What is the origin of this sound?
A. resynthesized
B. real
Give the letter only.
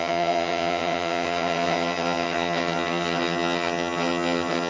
A